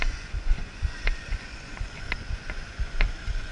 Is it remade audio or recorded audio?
remade